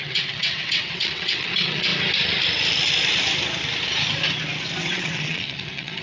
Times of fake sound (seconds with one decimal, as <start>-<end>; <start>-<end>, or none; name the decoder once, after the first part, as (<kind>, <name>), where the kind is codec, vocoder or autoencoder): 0.0-1.9 (vocoder, WaveNeXt); 4.8-6.0